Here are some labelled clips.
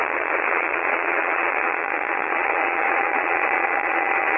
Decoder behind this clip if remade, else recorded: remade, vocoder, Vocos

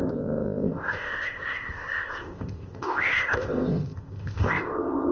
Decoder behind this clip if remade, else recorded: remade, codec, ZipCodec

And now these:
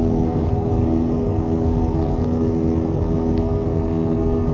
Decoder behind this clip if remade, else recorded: remade, codec, SNAC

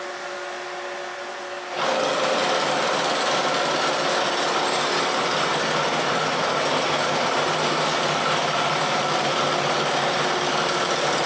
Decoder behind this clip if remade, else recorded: recorded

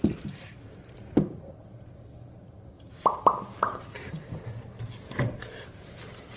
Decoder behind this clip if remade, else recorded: remade, vocoder, BigVGAN v2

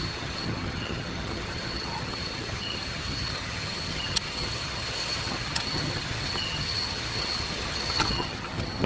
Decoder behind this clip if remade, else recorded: remade, vocoder, HiFi-GAN